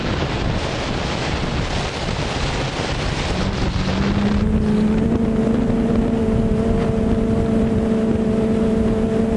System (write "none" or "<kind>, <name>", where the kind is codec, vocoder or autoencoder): none